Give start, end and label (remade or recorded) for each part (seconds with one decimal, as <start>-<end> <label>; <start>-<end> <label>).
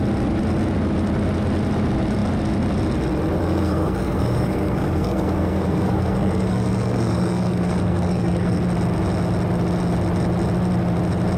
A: 0.0-3.4 recorded; 3.4-8.6 remade; 8.6-11.4 recorded